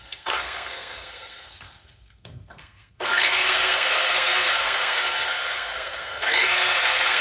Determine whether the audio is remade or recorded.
remade